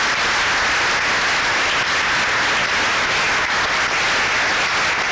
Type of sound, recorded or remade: recorded